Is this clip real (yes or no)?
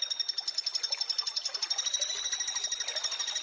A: yes